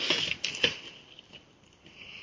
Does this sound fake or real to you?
fake